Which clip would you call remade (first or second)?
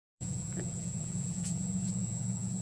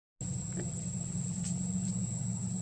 first